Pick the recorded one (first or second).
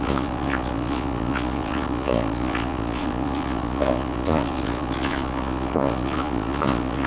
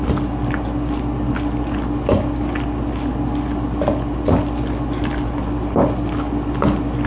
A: second